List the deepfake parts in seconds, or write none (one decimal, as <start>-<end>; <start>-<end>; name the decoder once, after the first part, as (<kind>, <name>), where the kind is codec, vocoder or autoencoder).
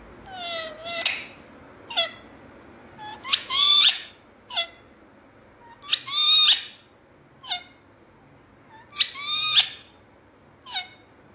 3.1-4.1 (vocoder, Vocos)